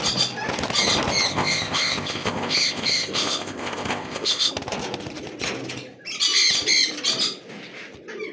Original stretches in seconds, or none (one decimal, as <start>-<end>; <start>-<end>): 0.0-1.3; 4.5-8.3